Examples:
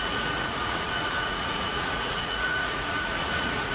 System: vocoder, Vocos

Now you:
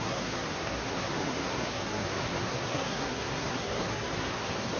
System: codec, SNAC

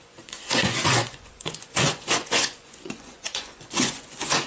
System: vocoder, Vocos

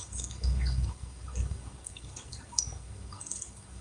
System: codec, SNAC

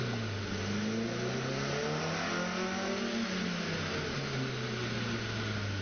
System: none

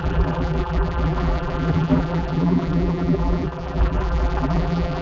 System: vocoder, BigVGAN v2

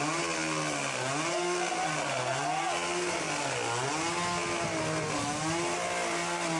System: none